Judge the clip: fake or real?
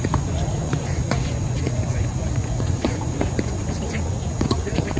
fake